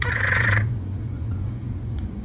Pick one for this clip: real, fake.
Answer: fake